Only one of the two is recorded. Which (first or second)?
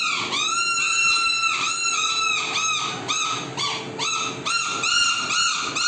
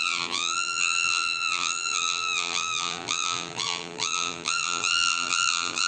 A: first